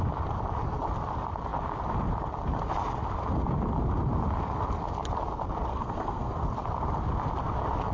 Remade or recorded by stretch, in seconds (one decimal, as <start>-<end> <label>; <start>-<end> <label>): 0.0-5.7 recorded; 5.7-6.4 remade; 6.4-7.9 recorded